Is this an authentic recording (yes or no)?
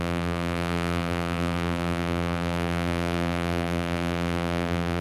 no